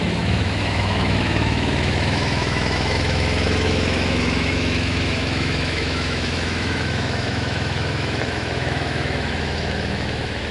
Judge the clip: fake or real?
fake